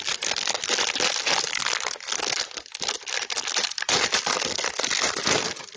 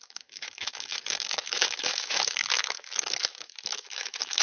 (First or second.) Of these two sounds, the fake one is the second